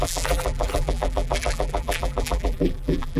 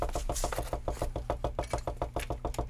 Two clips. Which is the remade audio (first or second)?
first